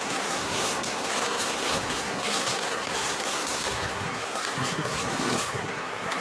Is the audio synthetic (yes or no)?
yes